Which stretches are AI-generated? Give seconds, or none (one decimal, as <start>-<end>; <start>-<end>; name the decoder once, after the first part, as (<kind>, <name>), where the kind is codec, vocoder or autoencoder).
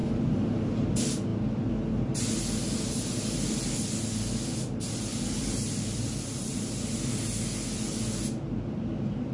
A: 0.0-0.6 (vocoder, BigVGAN v2); 5.1-7.0